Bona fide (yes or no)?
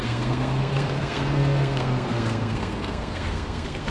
no